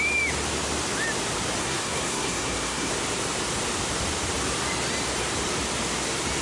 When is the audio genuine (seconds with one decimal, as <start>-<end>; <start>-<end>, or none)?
0.0-1.6; 2.9-6.4

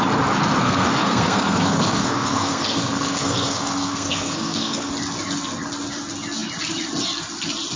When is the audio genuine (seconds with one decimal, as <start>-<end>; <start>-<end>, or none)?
0.0-0.6; 4.9-7.8

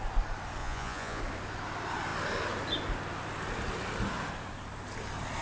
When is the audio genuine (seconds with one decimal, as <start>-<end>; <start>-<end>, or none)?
0.0-0.6; 1.2-5.4

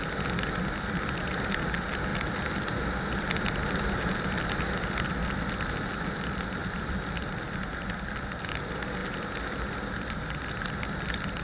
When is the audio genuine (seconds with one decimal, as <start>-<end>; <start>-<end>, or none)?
0.0-2.1; 5.1-6.6; 7.7-11.4

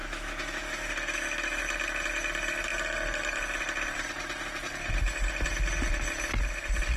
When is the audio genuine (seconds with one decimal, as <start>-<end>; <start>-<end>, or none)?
1.6-7.0

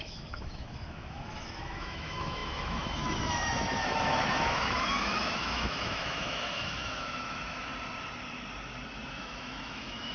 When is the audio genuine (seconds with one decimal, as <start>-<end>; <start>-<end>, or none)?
7.7-9.1

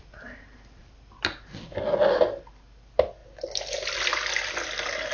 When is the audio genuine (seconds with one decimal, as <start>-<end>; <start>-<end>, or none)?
0.0-5.1

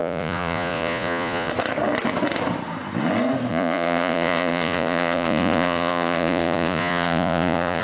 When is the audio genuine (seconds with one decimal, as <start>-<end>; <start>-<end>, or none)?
1.5-3.5